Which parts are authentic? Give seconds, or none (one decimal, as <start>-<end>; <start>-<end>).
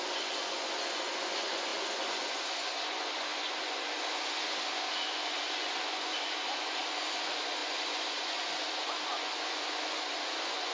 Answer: none